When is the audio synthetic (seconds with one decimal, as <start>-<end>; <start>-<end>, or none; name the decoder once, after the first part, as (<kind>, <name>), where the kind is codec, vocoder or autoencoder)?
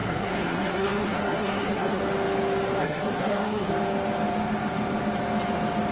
0.0-2.0 (codec, SNAC); 2.8-3.7